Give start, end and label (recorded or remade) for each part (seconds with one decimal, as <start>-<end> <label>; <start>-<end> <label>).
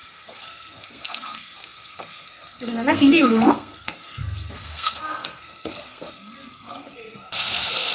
0.0-7.9 remade